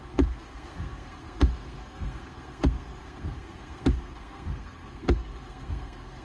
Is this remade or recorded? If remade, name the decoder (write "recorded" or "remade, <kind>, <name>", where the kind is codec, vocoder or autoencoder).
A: remade, codec, SNAC